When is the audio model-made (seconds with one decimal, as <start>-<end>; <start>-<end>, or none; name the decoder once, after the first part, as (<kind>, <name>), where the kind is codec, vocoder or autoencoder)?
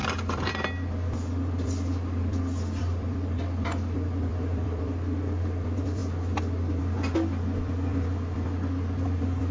2.8-3.4 (vocoder, BigVGAN v2); 4.3-4.8